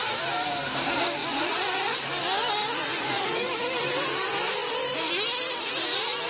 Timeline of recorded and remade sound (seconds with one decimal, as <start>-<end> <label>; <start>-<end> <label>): 0.0-1.2 recorded; 1.2-2.0 remade; 2.0-2.9 recorded; 2.9-3.5 remade; 3.5-6.3 recorded